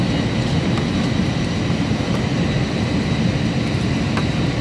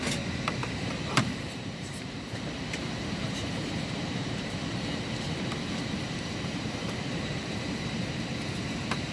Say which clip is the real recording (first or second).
first